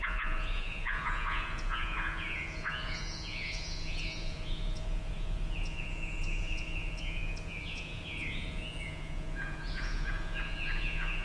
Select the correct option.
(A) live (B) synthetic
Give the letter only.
B